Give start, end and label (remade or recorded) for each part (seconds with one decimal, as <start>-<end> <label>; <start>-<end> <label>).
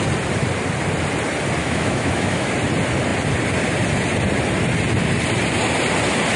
0.0-1.6 recorded; 1.6-2.5 remade; 2.5-6.4 recorded